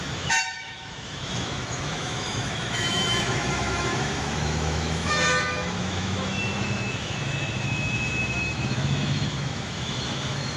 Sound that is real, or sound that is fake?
fake